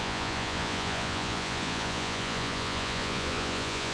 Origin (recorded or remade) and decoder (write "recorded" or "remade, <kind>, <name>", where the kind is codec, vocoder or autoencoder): remade, vocoder, Vocos